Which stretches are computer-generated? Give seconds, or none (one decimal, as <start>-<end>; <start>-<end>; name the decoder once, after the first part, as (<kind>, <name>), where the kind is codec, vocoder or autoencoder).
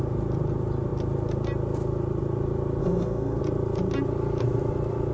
2.8-3.4 (codec, SNAC)